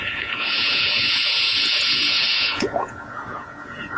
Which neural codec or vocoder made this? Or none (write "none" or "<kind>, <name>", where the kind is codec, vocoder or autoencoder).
vocoder, Vocos